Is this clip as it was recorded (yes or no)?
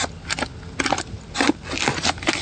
yes